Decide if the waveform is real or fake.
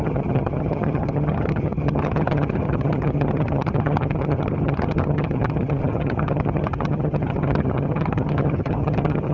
fake